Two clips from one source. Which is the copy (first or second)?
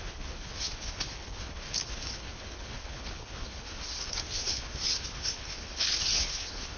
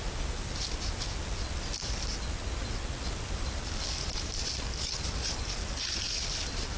first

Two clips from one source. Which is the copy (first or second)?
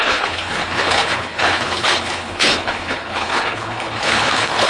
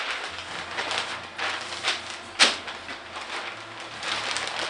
first